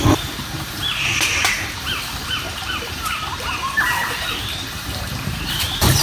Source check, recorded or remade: remade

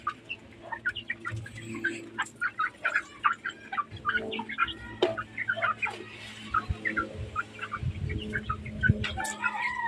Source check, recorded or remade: recorded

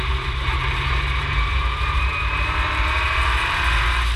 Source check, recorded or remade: remade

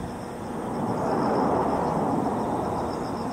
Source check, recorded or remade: recorded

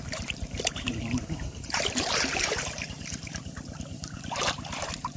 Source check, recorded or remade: remade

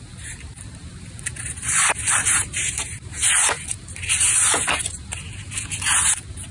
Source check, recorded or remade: remade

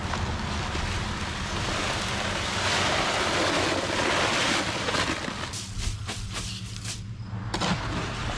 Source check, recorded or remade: recorded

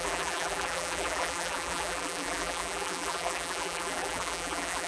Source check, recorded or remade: remade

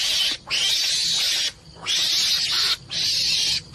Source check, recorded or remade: recorded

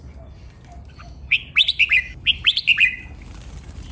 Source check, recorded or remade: recorded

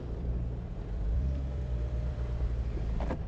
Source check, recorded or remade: remade